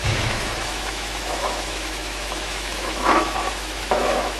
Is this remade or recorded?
remade